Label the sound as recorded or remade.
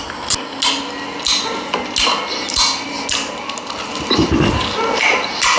recorded